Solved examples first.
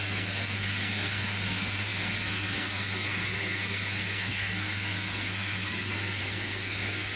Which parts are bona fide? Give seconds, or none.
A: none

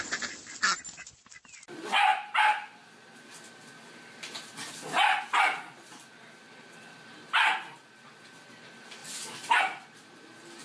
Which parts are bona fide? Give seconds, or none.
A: 0.0-10.6

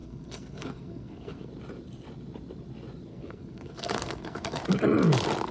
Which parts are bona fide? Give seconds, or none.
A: 1.5-3.1; 4.6-5.5

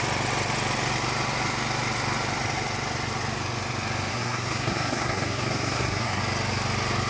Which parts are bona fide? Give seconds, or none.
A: 0.0-4.1; 6.2-7.1

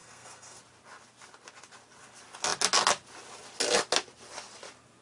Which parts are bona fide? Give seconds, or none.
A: 0.6-5.0

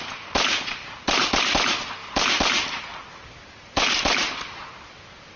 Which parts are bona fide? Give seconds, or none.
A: 0.0-5.4

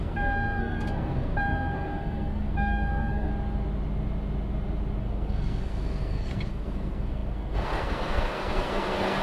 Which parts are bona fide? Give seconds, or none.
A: 3.3-5.0

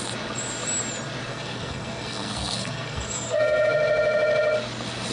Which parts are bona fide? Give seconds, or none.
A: 0.0-1.3; 3.7-5.1